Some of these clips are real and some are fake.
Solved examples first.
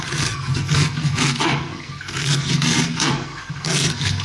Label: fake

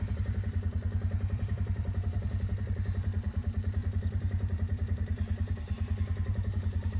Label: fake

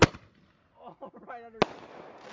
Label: real